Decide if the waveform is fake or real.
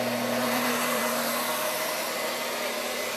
fake